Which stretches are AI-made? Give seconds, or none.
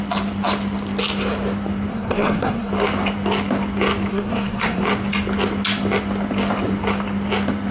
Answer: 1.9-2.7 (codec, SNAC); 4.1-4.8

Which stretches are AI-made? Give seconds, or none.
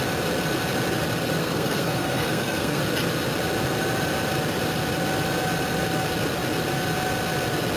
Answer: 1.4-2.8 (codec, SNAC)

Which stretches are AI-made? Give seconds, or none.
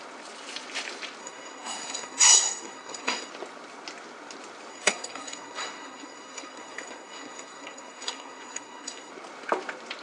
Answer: 1.2-3.3 (codec, SNAC); 4.7-9.1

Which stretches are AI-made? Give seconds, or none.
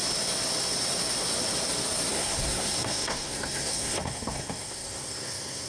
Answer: 2.1-5.7 (codec, SNAC)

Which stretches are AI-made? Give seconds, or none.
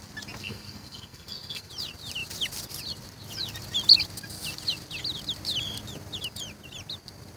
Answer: 0.4-1.7 (codec, SNAC)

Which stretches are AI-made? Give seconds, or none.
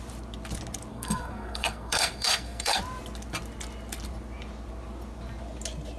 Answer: 0.9-2.8 (codec, SNAC)